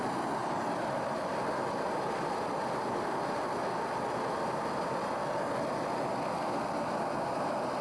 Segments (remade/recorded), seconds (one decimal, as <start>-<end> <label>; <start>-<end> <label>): 0.0-7.8 recorded

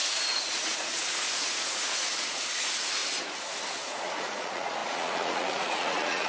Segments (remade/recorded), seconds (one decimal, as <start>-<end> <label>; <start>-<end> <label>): 0.0-3.0 remade; 3.0-3.9 recorded; 3.9-6.3 remade

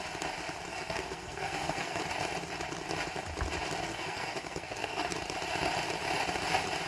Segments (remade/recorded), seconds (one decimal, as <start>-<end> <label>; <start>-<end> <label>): 0.0-0.7 recorded; 0.7-2.0 remade; 2.0-3.9 recorded; 3.9-5.1 remade; 5.1-6.9 recorded

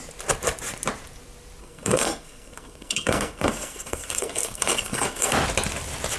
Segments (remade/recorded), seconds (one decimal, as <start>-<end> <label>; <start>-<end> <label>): 0.0-1.6 recorded; 1.6-5.3 remade; 5.3-6.2 recorded

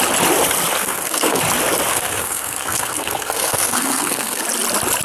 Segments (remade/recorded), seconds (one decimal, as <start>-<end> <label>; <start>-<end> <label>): 0.0-0.8 recorded; 0.8-1.4 remade; 1.4-1.9 recorded; 1.9-4.4 remade; 4.4-5.0 recorded

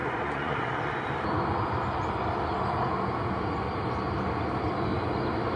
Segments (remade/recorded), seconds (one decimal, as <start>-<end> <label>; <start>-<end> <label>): 0.0-1.1 remade; 1.1-5.6 recorded